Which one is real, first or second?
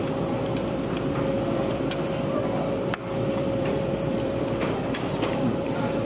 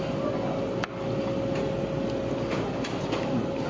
second